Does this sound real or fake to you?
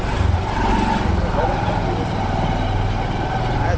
real